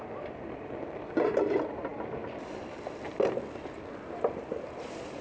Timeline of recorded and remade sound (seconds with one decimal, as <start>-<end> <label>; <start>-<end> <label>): 0.0-5.2 recorded